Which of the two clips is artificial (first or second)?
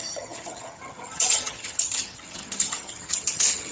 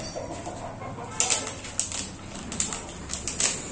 first